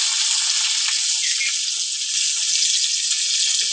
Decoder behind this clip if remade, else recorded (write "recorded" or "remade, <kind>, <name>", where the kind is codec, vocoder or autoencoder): recorded